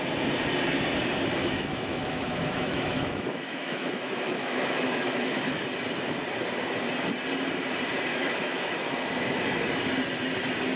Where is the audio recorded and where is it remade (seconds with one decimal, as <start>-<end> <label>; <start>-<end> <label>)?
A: 0.0-1.4 recorded; 1.4-5.5 remade; 5.5-8.1 recorded; 8.1-8.9 remade; 8.9-10.8 recorded